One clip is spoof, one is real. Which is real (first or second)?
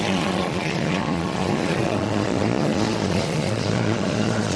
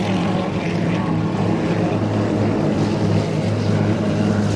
second